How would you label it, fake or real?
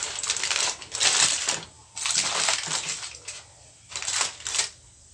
real